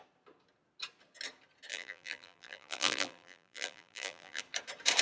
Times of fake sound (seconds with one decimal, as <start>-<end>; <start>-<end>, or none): 1.7-4.4